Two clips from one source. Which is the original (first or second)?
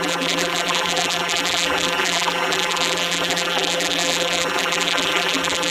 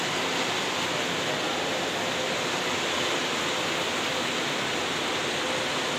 second